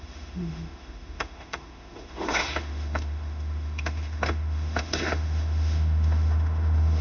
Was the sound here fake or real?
fake